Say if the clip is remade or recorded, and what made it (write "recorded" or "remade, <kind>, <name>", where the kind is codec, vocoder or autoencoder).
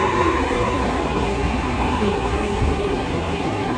remade, codec, SNAC